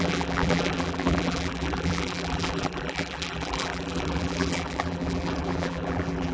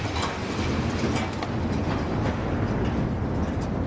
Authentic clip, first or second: second